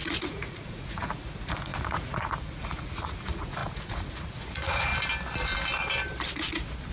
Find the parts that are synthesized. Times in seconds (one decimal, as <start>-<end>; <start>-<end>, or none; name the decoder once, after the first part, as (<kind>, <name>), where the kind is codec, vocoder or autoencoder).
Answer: 0.0-4.9 (vocoder, Vocos)